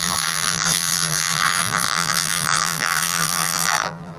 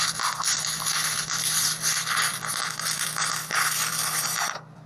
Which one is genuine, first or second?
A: second